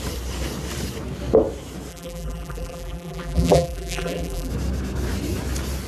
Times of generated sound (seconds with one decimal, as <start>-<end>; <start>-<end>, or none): 1.9-4.5

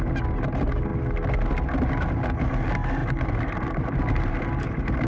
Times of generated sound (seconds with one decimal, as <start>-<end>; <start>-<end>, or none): 3.0-5.1

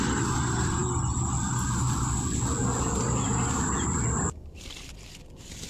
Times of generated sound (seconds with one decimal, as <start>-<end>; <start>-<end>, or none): 0.0-0.8; 2.8-5.7